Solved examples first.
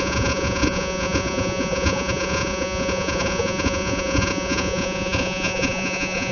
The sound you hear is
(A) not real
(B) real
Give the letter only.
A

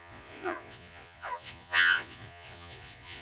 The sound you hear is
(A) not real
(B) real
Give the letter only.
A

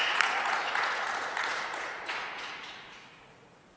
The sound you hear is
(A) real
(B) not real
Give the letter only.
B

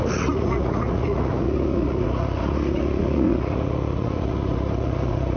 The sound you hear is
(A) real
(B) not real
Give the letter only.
B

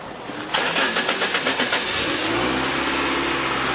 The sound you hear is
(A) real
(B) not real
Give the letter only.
A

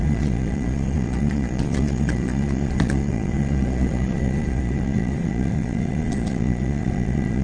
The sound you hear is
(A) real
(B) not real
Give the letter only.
B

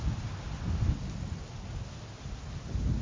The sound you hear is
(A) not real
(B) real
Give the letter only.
B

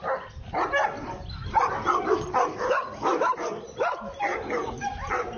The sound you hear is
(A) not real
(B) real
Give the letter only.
B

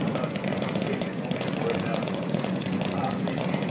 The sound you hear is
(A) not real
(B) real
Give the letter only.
A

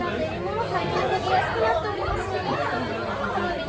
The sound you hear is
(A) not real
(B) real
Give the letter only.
B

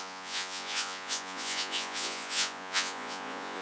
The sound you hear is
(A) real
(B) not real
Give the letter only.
B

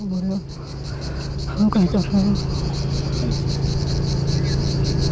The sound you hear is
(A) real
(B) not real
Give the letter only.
A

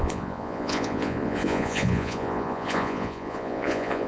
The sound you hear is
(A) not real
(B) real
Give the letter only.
A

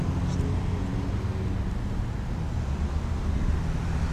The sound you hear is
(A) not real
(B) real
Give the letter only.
B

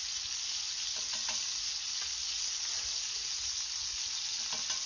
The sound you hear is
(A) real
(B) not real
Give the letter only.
A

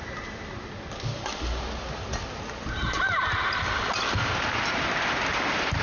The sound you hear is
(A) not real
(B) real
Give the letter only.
B